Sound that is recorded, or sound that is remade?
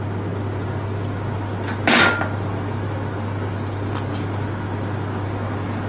recorded